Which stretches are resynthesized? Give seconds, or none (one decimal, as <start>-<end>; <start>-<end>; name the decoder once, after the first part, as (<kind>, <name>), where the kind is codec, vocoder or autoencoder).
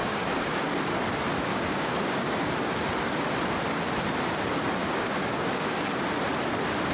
0.0-0.7 (codec, DAC); 1.5-2.5; 4.8-5.9